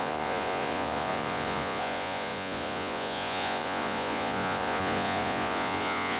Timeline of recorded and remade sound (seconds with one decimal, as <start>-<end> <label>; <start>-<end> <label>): 0.0-6.2 remade